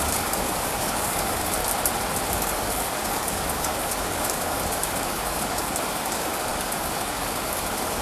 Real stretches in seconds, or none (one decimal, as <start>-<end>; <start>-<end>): 1.6-2.3